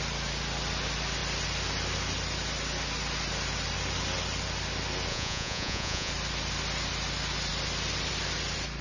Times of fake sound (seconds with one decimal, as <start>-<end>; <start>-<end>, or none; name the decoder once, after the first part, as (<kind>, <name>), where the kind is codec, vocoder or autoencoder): 5.1-6.1 (vocoder, Vocos)